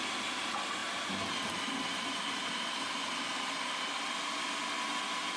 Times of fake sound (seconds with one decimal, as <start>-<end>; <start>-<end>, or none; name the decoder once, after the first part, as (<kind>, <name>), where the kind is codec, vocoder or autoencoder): none